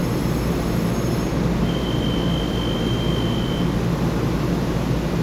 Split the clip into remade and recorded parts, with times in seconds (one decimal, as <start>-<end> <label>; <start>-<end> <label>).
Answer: 0.0-5.2 recorded